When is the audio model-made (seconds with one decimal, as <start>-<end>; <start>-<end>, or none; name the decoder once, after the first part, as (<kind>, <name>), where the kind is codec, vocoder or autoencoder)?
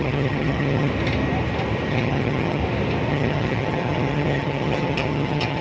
0.0-0.9 (vocoder, HiFi-GAN); 1.9-2.6; 3.1-5.6